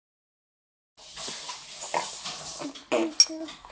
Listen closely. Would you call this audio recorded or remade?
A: recorded